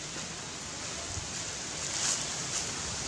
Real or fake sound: real